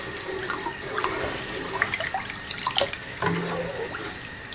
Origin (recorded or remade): recorded